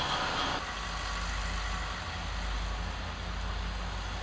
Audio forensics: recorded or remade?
recorded